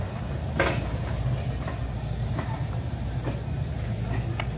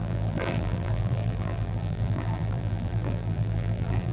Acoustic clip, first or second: first